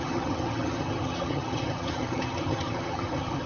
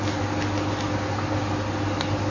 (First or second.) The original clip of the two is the second